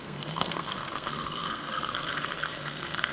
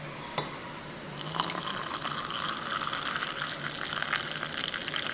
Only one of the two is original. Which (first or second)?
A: second